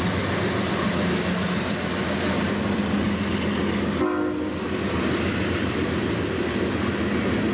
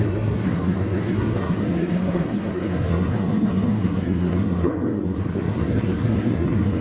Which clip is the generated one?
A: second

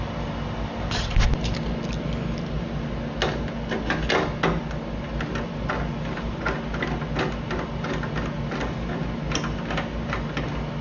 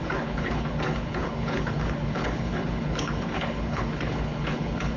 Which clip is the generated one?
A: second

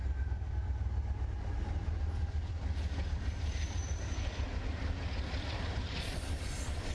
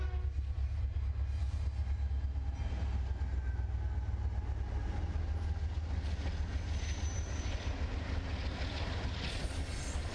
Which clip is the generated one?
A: first